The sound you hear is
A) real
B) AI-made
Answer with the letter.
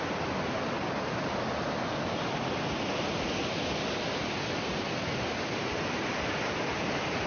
A